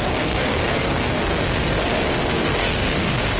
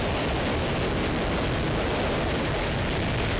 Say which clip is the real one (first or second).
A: second